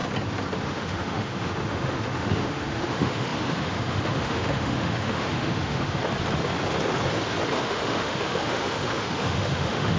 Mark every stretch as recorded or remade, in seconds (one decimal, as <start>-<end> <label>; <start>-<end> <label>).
0.0-0.6 recorded; 0.6-6.0 remade; 6.0-7.6 recorded; 7.6-10.0 remade